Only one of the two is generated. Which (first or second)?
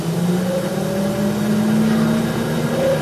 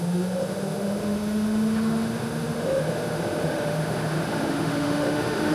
second